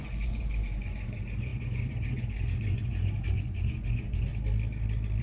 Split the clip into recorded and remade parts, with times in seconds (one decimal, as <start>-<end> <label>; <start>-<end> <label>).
0.0-4.3 remade; 4.3-5.2 recorded